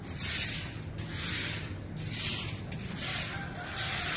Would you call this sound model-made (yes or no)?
no